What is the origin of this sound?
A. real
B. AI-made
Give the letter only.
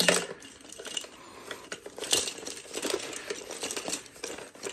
A